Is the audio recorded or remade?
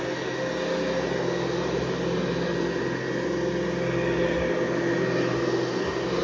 recorded